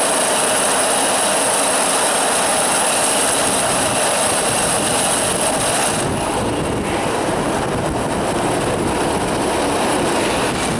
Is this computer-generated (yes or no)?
no